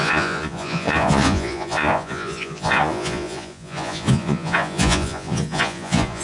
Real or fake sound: fake